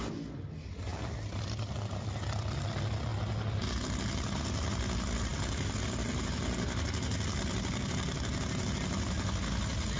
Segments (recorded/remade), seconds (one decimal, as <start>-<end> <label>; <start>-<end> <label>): 0.0-10.0 recorded